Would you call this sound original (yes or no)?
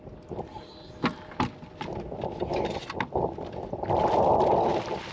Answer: yes